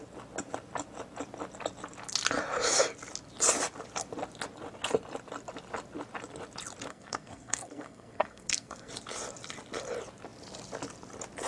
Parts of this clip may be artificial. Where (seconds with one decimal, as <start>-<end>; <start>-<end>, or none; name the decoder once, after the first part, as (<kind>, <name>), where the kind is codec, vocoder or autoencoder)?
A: 6.9-8.9 (codec, SNAC)

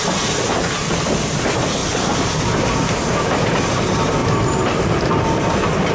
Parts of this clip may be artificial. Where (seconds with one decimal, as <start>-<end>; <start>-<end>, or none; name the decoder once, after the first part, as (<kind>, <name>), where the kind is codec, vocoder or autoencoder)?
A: none

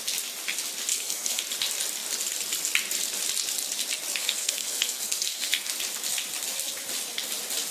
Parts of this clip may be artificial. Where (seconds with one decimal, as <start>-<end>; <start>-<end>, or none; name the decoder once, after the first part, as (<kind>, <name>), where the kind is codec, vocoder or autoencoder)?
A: 0.9-1.4 (codec, SNAC); 4.1-5.7

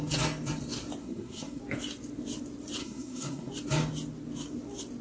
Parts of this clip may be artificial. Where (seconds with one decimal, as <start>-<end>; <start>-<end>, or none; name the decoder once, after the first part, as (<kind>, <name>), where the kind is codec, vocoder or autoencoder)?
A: 1.0-1.6 (codec, SNAC); 2.8-3.5